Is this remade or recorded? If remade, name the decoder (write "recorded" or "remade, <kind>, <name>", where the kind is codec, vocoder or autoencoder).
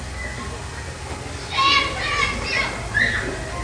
recorded